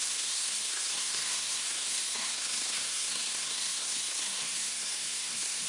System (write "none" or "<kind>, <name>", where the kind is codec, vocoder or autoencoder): codec, SNAC